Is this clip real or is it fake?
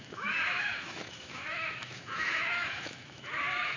fake